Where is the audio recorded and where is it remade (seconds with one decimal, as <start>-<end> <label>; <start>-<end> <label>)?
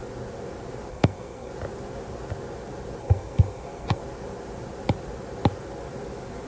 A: 0.0-0.9 recorded; 0.9-1.5 remade; 1.5-3.0 recorded; 3.0-4.0 remade; 4.0-6.5 recorded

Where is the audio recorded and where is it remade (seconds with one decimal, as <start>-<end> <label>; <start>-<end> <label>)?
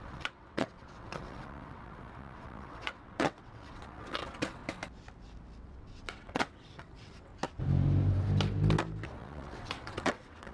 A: 0.0-4.6 remade; 4.6-5.6 recorded; 5.6-7.3 remade; 7.3-9.2 recorded; 9.2-10.5 remade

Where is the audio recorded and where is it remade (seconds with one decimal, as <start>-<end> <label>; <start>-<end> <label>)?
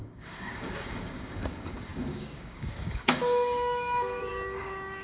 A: 0.0-5.0 remade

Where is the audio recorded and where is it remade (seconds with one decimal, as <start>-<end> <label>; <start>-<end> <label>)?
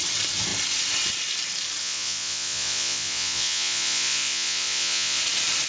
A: 0.0-1.8 recorded; 1.8-5.2 remade; 5.2-5.7 recorded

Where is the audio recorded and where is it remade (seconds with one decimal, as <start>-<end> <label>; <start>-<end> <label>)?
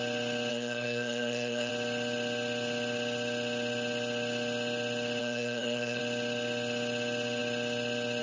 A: 0.0-0.5 recorded; 0.5-1.7 remade; 1.7-5.2 recorded; 5.2-6.0 remade; 6.0-8.2 recorded